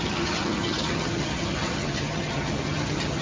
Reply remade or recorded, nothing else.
remade